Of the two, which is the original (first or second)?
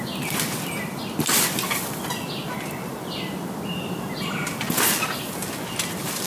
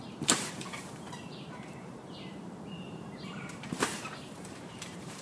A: first